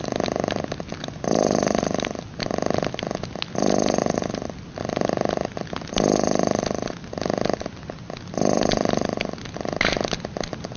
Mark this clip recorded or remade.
recorded